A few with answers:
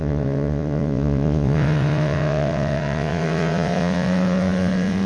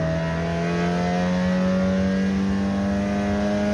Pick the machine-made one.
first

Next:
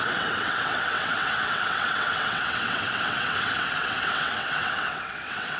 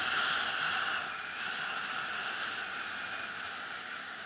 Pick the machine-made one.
first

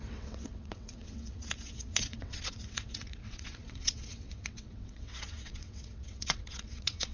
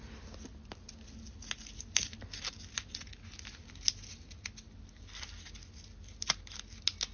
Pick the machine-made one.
first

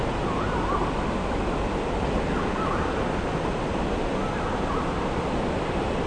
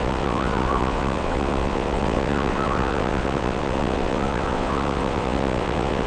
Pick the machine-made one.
second